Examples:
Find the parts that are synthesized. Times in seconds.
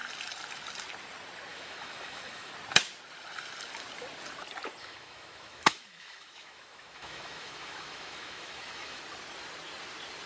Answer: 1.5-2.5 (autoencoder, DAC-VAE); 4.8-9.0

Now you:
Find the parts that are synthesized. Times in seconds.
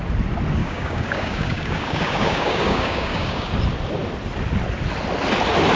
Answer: 0.6-3.5 (codec, DAC)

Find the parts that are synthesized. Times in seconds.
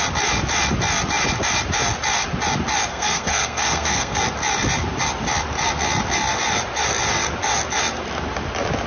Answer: 2.9-4.2 (codec, SNAC)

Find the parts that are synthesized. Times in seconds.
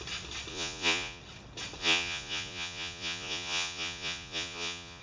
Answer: 0.5-1.2 (vocoder, Vocos); 1.8-5.0